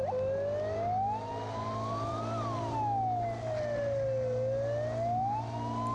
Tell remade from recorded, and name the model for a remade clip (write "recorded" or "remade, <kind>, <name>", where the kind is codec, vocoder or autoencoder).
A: recorded